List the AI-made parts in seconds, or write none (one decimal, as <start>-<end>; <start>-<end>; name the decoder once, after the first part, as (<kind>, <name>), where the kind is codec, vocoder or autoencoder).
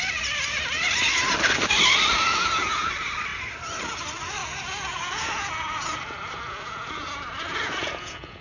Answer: 2.3-2.9 (vocoder, Vocos); 4.4-8.4